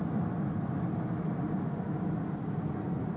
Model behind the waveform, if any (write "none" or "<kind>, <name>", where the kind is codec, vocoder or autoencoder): none